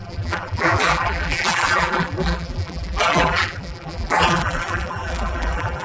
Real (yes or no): no